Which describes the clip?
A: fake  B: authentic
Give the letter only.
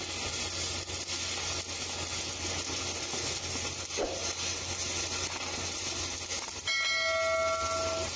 B